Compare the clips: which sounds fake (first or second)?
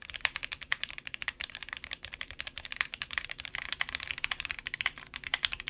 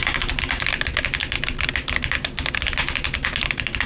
first